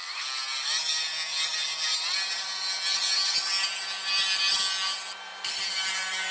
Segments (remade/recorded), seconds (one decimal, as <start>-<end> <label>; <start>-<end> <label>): 0.0-6.3 recorded